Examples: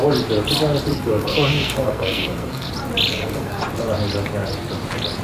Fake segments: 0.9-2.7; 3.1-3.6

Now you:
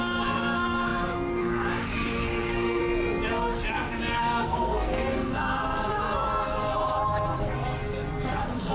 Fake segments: 0.0-2.8; 3.3-8.7

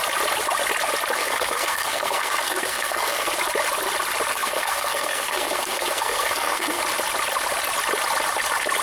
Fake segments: 1.2-3.3; 4.3-6.8

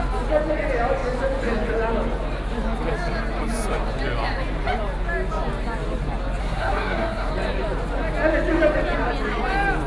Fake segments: 6.4-7.3

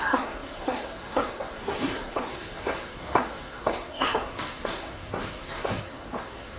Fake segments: 0.0-6.6

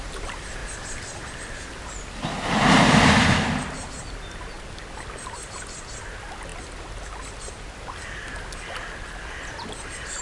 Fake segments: none

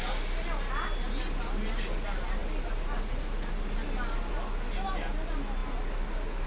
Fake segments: none